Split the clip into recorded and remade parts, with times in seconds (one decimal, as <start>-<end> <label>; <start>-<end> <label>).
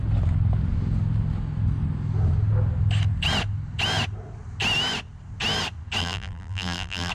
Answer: 0.0-6.0 recorded; 6.0-7.1 remade